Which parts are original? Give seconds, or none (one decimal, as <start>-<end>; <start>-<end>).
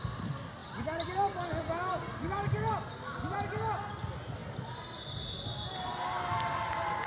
0.0-7.1